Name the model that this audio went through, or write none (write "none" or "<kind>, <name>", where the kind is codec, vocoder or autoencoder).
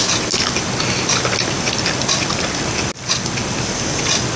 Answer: none